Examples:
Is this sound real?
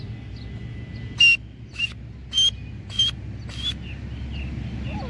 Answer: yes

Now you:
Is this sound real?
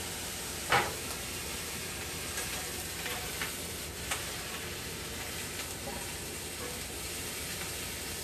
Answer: yes